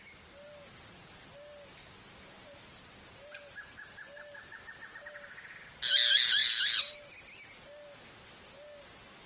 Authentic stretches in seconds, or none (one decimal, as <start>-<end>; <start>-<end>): 0.0-9.3